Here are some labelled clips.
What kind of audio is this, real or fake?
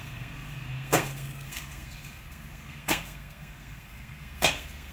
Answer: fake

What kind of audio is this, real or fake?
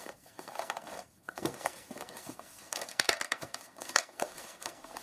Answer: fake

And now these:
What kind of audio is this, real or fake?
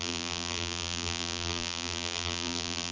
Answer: fake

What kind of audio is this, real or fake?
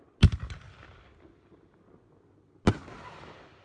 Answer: real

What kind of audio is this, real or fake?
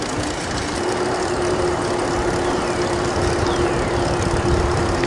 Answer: real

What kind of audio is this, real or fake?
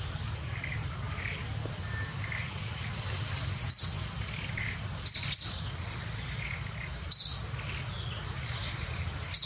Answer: real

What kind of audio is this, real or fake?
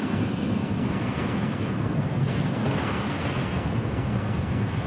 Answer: fake